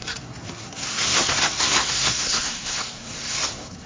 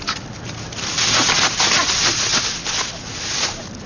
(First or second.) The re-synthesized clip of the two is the first